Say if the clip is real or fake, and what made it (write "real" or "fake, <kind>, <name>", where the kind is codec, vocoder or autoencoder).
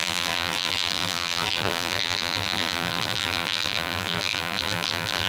fake, vocoder, BigVGAN v2